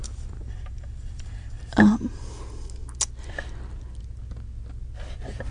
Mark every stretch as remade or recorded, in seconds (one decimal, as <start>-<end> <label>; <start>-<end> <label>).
0.0-2.2 remade; 2.2-5.5 recorded